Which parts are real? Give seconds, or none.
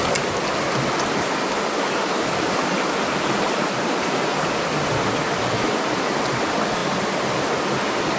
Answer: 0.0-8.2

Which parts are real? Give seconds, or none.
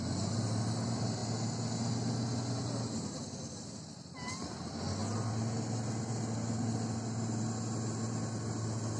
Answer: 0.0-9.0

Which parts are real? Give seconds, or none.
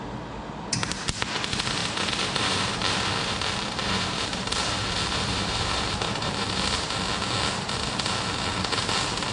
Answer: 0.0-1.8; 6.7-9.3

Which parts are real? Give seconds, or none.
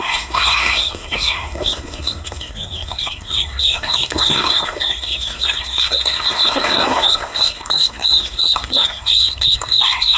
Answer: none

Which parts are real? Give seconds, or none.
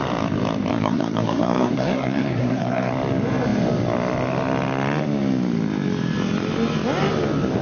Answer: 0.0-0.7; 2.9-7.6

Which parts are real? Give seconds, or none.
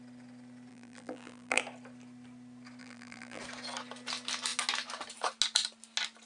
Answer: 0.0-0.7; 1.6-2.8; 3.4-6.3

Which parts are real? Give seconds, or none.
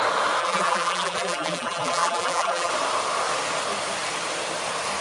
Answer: 0.0-0.4; 2.7-5.0